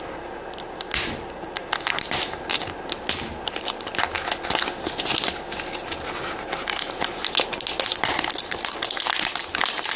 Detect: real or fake real